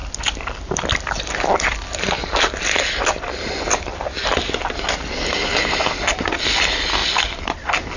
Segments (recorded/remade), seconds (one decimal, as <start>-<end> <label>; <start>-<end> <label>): 0.0-2.5 remade; 2.5-3.9 recorded; 3.9-4.7 remade; 4.7-7.0 recorded; 7.0-8.0 remade